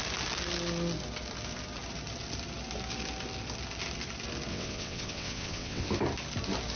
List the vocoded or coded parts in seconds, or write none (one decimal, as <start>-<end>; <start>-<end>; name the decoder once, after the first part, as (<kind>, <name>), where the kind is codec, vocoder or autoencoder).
4.5-5.9 (vocoder, WaveNeXt)